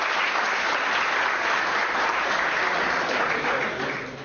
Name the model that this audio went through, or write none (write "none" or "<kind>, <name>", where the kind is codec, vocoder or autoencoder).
none